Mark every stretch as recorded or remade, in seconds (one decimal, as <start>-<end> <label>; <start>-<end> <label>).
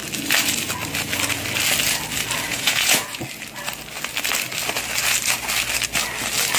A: 0.0-2.5 recorded; 2.5-3.2 remade; 3.2-6.6 recorded